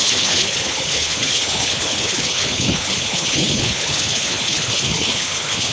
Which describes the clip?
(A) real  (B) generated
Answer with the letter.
B